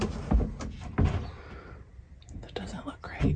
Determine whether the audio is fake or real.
real